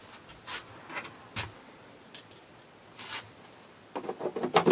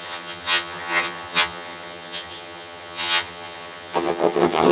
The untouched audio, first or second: first